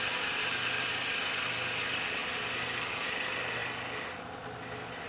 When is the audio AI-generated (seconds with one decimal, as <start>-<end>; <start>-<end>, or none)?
none